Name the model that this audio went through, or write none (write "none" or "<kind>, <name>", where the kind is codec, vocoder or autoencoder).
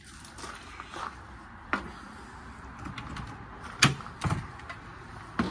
none